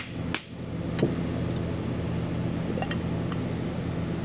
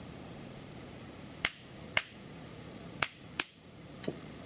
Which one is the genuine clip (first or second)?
first